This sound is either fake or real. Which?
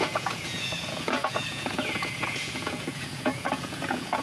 fake